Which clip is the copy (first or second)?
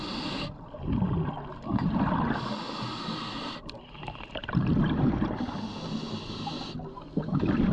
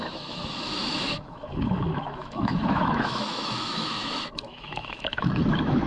second